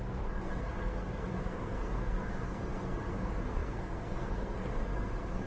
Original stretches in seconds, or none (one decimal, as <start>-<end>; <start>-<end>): none